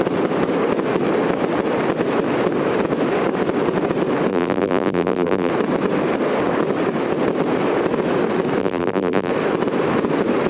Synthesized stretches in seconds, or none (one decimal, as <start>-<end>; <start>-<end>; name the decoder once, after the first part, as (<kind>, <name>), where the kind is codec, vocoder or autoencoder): 4.3-5.5 (vocoder, BigVGAN v2); 8.6-9.3